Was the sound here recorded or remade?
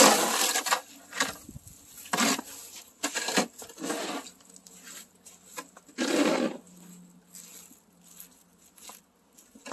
recorded